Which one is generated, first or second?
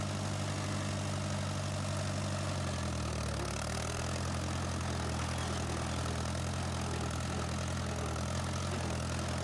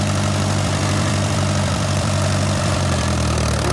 second